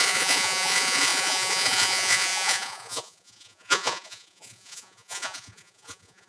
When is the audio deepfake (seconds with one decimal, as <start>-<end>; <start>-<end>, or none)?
0.0-6.3